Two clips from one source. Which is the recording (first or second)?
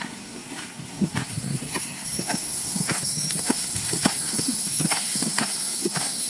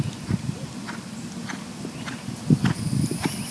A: second